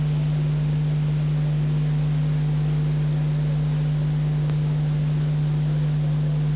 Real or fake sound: real